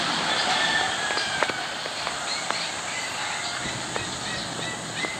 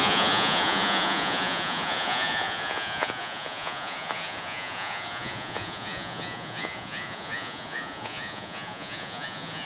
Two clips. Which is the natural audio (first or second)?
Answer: first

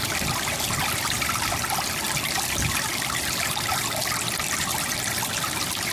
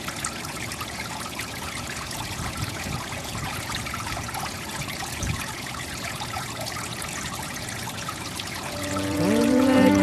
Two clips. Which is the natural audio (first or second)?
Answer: first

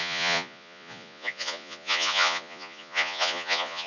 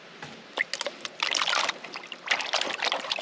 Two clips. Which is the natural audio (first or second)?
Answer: second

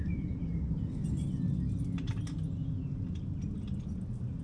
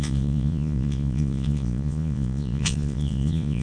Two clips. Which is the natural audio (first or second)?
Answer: first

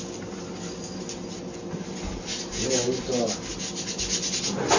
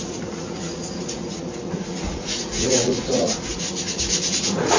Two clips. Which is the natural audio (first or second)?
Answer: first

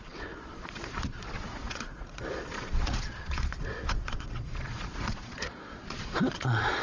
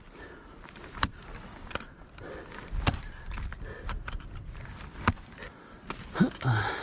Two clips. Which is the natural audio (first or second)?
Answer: second